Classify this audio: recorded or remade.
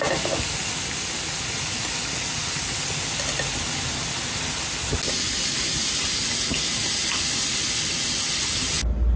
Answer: recorded